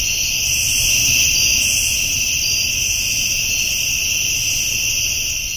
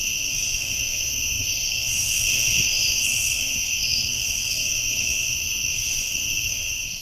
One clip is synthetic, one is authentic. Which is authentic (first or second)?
first